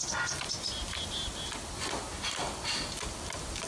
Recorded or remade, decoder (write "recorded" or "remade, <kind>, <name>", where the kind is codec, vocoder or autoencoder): recorded